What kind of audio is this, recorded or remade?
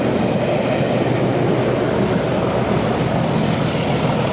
recorded